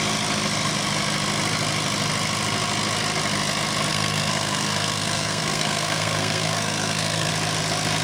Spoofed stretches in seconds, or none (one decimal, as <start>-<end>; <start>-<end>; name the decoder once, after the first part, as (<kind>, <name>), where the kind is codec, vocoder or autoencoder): 3.9-7.3 (codec, SNAC)

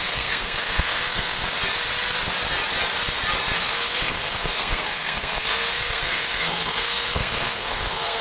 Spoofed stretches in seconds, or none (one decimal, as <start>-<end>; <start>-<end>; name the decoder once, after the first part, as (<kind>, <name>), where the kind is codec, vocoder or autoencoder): 0.0-1.4 (codec, SNAC); 3.6-8.2

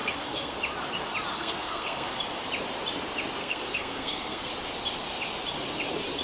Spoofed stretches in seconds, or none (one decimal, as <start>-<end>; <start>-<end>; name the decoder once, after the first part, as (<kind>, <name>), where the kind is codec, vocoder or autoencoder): 0.0-0.6 (codec, SNAC); 1.3-2.2; 3.4-4.5

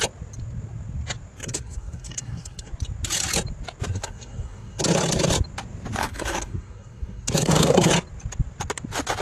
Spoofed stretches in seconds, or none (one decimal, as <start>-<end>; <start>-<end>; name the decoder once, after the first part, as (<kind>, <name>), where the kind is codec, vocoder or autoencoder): 1.4-2.7 (codec, SNAC); 3.9-4.8; 6.0-7.9